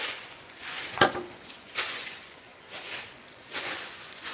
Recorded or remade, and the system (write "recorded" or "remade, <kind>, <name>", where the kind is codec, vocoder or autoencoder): remade, vocoder, Vocos